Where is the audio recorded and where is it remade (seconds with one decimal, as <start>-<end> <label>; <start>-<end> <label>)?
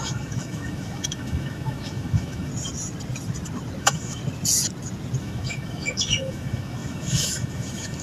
0.0-2.5 remade; 2.5-3.8 recorded; 3.8-4.2 remade; 4.2-5.2 recorded; 5.2-8.0 remade